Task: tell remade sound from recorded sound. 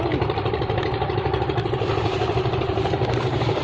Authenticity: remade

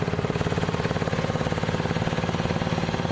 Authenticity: recorded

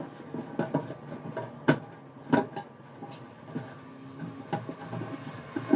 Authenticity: recorded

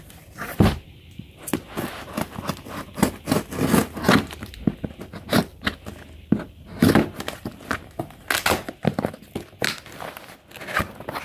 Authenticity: recorded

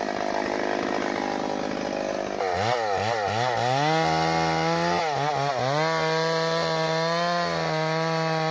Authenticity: recorded